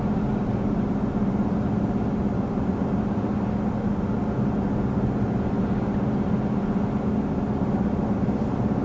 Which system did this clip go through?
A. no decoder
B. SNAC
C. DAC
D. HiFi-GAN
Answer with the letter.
A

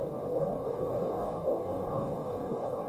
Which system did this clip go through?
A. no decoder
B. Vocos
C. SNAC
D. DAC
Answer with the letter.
D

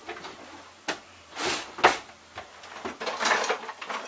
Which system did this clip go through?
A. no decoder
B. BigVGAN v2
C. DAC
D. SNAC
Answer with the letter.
A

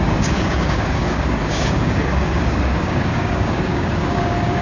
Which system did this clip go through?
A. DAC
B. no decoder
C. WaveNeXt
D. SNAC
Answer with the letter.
A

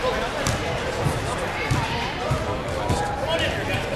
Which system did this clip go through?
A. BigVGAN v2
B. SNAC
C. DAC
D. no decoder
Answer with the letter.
D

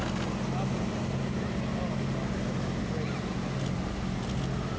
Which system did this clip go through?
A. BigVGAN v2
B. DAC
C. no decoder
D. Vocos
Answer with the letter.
C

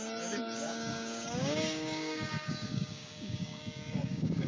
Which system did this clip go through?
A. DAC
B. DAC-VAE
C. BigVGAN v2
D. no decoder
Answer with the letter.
A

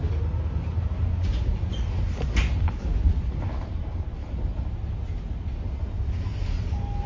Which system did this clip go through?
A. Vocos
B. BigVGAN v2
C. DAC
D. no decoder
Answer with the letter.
D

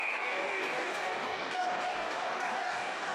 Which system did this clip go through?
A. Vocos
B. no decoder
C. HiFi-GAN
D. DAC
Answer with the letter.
D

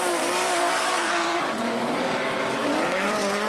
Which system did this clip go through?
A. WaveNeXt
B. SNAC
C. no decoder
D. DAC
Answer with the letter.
D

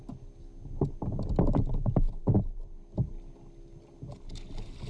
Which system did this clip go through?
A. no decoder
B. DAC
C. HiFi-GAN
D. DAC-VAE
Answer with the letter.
A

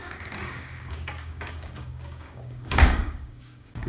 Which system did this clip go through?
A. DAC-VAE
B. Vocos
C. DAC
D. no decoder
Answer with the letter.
C